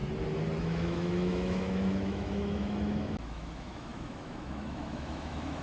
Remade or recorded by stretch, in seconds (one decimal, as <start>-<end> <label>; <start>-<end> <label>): 0.0-0.6 recorded; 0.6-5.6 remade

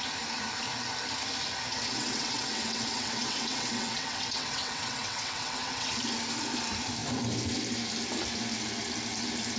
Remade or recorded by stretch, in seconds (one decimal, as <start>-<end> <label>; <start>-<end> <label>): 0.0-1.7 recorded; 1.7-5.9 remade; 5.9-9.6 recorded